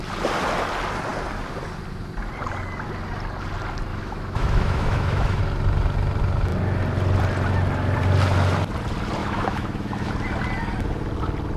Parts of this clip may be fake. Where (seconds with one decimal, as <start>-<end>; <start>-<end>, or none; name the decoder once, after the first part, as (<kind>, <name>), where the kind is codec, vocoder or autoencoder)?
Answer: 3.9-5.4 (autoencoder, DAC-VAE); 9.2-10.1